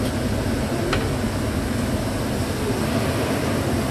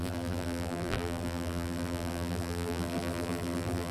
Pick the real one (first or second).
first